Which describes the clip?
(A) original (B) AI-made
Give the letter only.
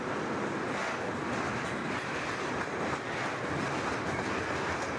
A